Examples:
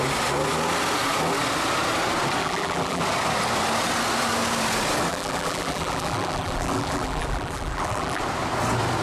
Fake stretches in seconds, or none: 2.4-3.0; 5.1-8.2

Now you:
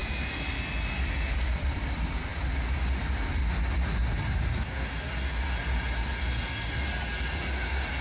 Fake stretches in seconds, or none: 0.0-3.4

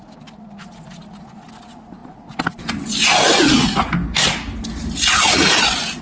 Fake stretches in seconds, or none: none

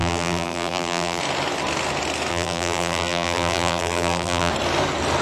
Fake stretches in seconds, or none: 0.0-1.2; 2.3-4.5

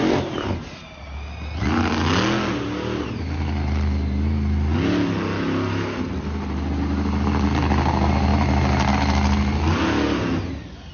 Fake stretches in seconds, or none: none

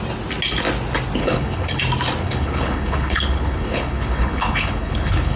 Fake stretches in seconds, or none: 1.2-1.8; 2.2-5.4

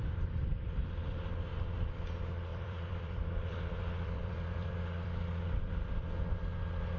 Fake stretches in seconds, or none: 2.5-5.6

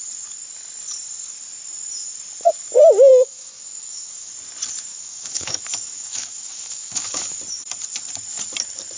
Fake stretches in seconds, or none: 3.1-4.3; 4.9-7.4